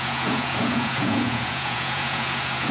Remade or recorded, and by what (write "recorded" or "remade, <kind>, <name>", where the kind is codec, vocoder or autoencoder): remade, vocoder, Vocos